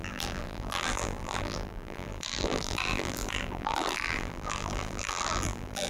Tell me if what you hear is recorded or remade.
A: remade